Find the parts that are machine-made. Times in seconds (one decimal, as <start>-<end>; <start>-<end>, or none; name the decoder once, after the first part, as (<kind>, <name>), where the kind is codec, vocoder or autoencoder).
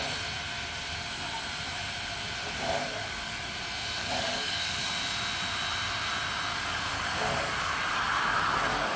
2.8-3.5 (codec, DAC); 4.0-4.9; 6.5-9.0